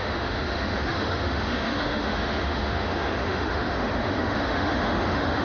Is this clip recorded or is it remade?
remade